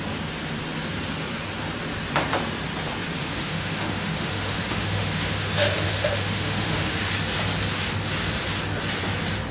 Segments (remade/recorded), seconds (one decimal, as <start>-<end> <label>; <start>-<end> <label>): 0.0-3.2 recorded; 3.2-7.1 remade; 7.1-9.5 recorded